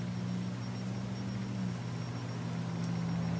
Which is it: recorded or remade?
recorded